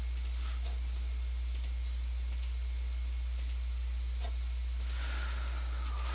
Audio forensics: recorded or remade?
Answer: recorded